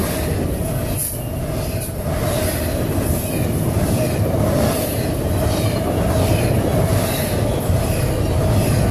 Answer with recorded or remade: recorded